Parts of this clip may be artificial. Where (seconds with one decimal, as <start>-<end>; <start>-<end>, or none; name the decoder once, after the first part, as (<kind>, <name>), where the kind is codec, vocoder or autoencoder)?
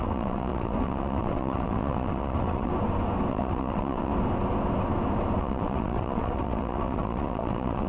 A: 0.0-2.7 (vocoder, WaveNeXt); 3.3-4.1; 5.4-7.9